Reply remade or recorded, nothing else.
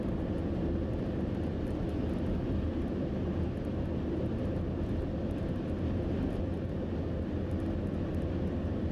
recorded